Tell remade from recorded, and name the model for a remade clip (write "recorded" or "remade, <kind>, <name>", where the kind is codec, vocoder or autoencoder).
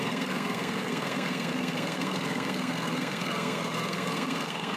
remade, codec, SNAC